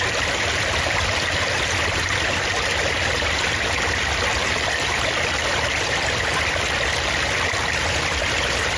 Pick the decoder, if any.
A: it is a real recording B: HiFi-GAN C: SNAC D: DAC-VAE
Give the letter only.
A